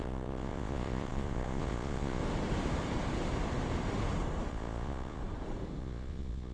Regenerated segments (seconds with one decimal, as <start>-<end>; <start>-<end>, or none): 0.0-2.2; 4.5-5.2; 5.8-6.5